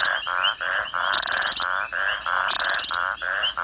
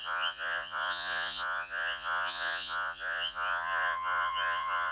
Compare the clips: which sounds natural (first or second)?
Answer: first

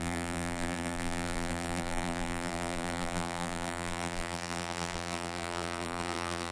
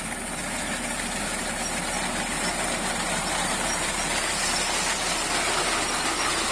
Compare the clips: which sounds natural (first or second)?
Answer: second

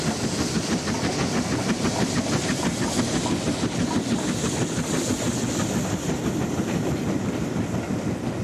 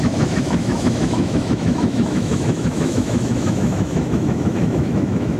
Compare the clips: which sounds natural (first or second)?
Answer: first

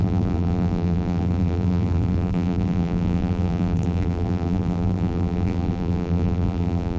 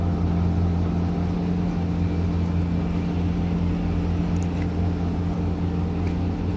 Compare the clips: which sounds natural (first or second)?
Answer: second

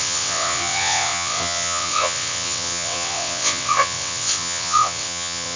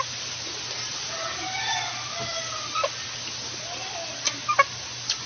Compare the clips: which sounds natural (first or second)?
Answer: second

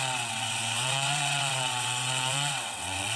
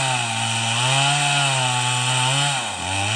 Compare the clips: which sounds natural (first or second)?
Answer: second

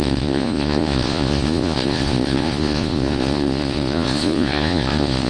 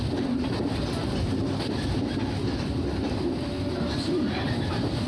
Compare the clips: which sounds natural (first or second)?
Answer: second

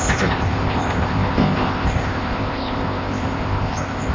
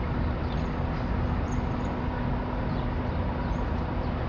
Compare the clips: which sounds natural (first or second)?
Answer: second